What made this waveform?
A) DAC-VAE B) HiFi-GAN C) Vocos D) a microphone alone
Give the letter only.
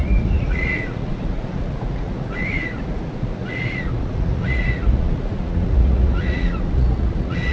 C